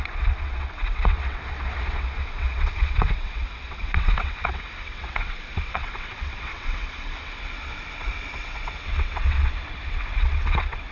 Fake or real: fake